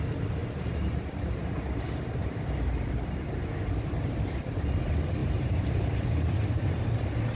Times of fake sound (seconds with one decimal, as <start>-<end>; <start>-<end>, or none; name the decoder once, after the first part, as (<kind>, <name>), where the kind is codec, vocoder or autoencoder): 0.4-4.8 (vocoder, BigVGAN v2); 5.2-6.8

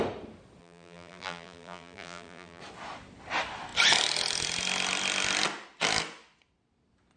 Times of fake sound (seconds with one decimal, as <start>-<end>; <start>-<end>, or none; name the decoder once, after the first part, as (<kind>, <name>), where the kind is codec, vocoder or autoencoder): 0.6-2.6 (vocoder, BigVGAN v2)

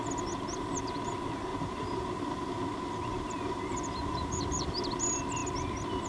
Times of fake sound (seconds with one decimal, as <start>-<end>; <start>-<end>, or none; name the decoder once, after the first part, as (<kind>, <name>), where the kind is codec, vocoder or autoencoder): 1.5-4.7 (vocoder, BigVGAN v2)

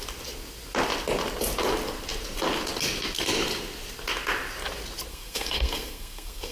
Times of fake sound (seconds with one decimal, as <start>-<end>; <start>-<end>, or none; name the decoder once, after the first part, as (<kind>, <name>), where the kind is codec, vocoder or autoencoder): 5.1-6.5 (codec, SNAC)